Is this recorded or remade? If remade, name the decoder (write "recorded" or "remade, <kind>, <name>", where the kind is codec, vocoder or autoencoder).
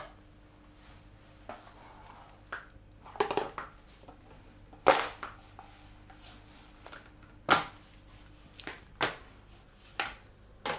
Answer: recorded